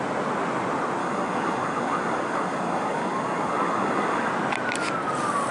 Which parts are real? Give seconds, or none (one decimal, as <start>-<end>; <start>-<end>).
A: 0.0-1.0; 4.3-5.5